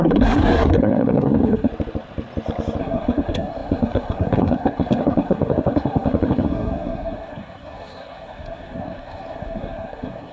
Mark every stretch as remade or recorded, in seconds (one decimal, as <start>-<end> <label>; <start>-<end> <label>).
0.0-1.7 remade; 1.7-2.8 recorded; 2.8-10.3 remade